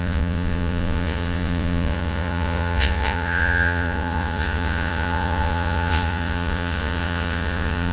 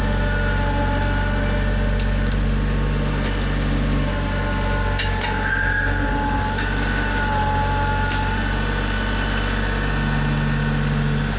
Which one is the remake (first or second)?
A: first